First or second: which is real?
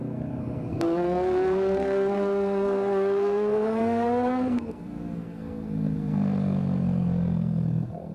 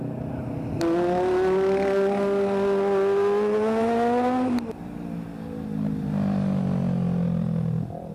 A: second